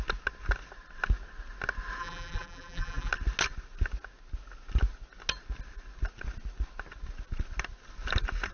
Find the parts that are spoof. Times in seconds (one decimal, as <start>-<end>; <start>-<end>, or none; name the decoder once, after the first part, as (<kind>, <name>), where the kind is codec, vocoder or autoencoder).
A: 2.0-3.1 (vocoder, BigVGAN v2)